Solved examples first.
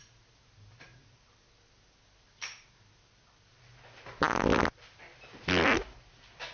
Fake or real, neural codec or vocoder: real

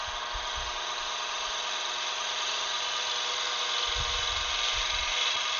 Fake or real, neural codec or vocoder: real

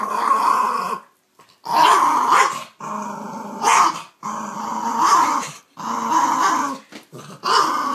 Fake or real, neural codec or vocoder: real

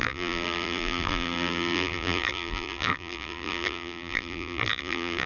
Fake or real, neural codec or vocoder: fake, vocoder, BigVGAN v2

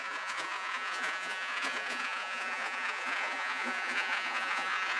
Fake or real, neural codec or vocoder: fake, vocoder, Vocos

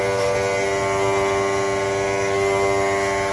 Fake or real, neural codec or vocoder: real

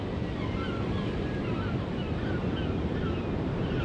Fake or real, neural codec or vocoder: real